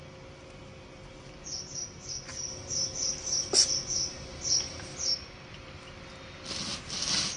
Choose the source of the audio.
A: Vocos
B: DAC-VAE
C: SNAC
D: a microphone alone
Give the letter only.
D